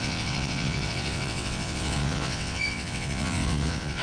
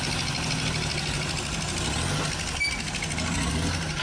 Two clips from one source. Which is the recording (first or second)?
second